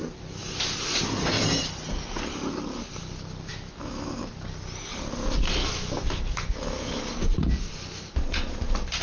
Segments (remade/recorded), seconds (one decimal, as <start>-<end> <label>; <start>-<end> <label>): 0.0-3.5 recorded; 3.5-4.2 remade; 4.2-5.6 recorded; 5.6-7.1 remade; 7.1-9.0 recorded